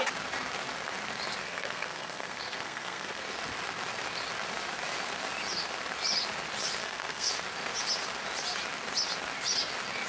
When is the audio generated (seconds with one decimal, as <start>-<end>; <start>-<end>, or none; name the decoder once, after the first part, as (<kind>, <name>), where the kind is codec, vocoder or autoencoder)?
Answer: 1.4-3.2 (codec, SNAC); 6.8-7.3